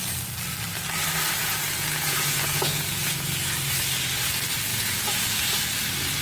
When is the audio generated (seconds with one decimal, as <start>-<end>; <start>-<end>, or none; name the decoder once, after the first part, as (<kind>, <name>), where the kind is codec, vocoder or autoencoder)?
1.4-3.3 (vocoder, Vocos); 4.7-5.4